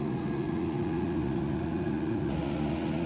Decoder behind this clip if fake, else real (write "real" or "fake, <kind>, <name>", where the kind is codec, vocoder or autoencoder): fake, vocoder, Vocos